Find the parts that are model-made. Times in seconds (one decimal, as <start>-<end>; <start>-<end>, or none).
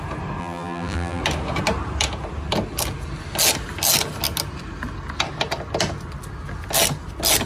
0.4-1.2